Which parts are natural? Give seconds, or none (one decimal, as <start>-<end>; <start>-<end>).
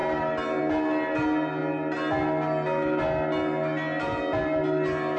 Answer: 0.0-5.2